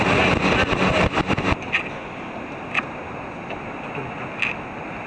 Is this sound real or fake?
real